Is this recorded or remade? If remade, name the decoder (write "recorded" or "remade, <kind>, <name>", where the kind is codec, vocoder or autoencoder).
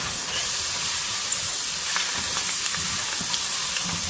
recorded